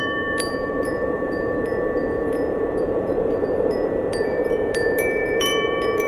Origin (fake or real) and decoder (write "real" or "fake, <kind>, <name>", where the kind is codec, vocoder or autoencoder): fake, vocoder, BigVGAN v2